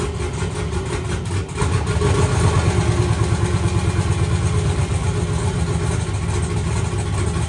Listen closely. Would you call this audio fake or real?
real